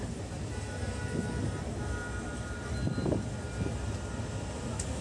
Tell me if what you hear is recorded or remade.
recorded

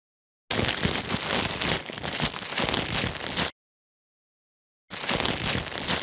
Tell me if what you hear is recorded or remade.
recorded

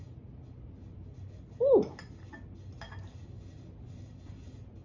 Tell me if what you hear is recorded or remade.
recorded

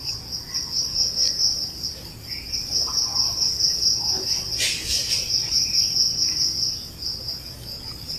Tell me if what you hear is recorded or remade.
recorded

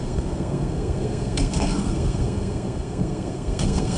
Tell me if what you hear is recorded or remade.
remade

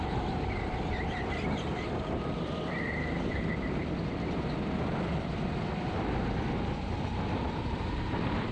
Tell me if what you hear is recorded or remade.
remade